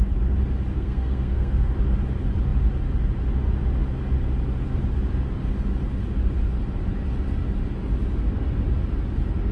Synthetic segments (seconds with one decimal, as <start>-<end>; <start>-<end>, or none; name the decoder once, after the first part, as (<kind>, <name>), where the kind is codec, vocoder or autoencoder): 0.7-1.7 (codec, SNAC)